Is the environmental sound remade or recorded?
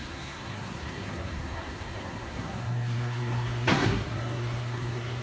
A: remade